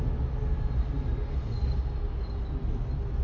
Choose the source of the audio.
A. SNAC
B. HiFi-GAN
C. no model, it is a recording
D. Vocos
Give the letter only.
C